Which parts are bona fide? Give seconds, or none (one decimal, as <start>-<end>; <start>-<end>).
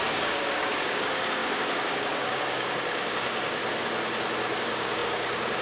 3.6-4.6